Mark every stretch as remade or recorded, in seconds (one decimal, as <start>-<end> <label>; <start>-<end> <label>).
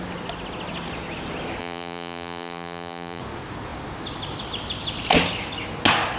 0.0-1.6 recorded; 1.6-3.2 remade; 3.2-6.2 recorded